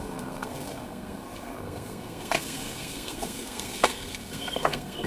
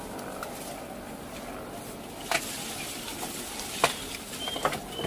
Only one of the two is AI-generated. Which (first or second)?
first